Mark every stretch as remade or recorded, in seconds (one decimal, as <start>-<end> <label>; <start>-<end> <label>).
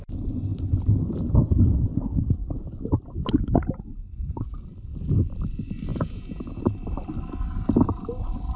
0.0-5.9 recorded; 5.9-6.6 remade; 6.6-8.6 recorded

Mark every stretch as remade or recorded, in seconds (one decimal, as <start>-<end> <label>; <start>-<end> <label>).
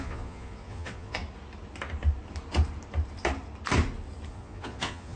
0.0-1.2 remade; 1.2-4.3 recorded; 4.3-5.2 remade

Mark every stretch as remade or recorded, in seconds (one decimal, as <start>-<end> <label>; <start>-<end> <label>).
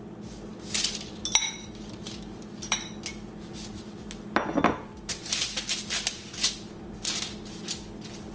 0.0-8.3 recorded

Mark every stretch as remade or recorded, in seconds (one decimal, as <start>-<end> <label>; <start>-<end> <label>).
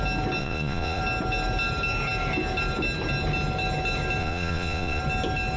0.0-0.4 recorded; 0.4-1.0 remade; 1.0-4.2 recorded; 4.2-5.0 remade; 5.0-5.6 recorded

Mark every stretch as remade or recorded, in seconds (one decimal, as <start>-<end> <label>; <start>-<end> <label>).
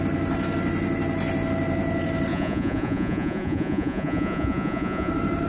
0.0-2.3 recorded; 2.3-5.1 remade; 5.1-5.5 recorded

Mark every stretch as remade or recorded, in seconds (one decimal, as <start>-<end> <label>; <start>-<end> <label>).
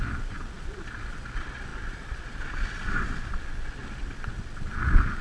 0.0-5.2 remade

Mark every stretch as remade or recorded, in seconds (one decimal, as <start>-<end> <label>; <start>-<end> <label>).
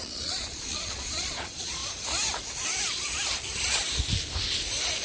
0.0-1.8 remade; 1.8-5.0 recorded